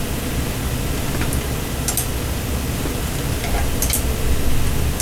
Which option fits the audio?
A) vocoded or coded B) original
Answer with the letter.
B